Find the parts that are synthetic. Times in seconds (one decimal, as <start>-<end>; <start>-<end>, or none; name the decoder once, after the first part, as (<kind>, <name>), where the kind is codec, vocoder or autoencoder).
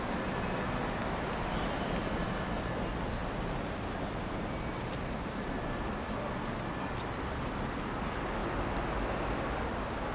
none